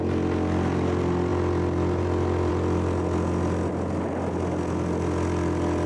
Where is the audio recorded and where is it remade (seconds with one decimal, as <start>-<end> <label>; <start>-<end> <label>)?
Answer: 0.0-5.9 recorded